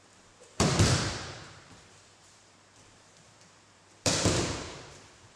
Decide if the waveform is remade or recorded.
remade